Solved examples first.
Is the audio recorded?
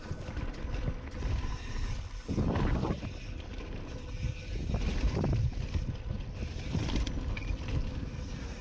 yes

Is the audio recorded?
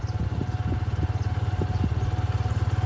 yes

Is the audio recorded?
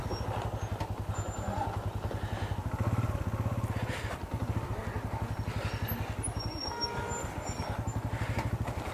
yes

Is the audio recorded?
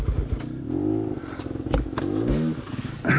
yes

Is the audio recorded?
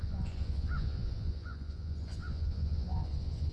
no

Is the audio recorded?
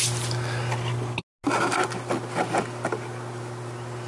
yes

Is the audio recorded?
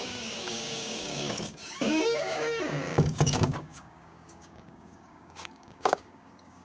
no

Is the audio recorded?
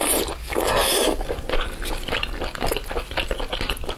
yes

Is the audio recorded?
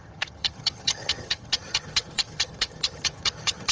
no